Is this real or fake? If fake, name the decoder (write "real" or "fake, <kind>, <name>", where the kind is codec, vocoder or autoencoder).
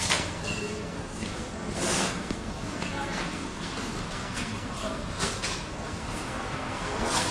fake, codec, SNAC